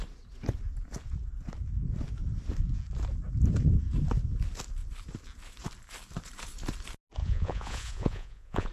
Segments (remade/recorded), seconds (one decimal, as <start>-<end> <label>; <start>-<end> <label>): 0.0-7.2 recorded; 7.2-8.7 remade